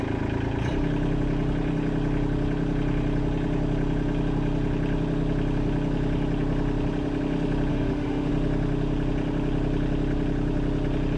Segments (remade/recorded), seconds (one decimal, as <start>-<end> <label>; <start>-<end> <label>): 0.0-7.7 recorded; 7.7-8.3 remade; 8.3-11.2 recorded